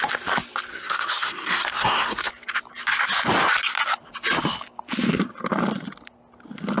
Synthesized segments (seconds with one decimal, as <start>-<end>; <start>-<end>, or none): 0.7-2.3